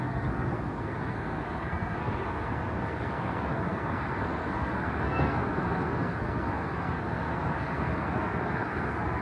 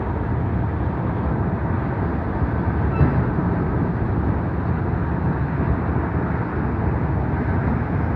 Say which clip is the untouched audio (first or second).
second